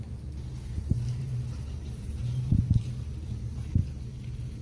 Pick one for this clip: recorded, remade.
remade